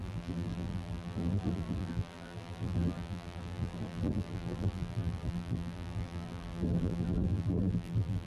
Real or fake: fake